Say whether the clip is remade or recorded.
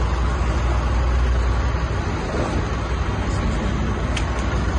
recorded